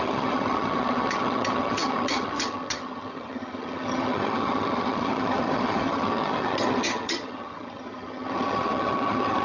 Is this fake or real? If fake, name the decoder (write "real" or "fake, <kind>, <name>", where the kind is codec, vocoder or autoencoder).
fake, vocoder, HiFi-GAN